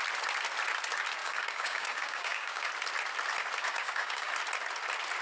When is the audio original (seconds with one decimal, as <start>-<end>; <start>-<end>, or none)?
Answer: 0.0-1.2; 2.7-3.6; 4.3-5.2